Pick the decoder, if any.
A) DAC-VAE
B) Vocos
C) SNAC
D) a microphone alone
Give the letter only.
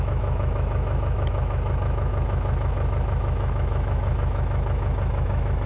A